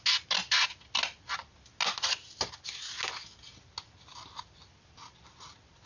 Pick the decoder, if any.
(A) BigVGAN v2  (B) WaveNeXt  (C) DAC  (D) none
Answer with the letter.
D